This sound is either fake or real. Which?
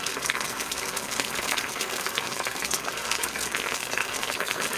fake